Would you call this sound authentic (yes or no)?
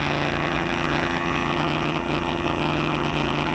no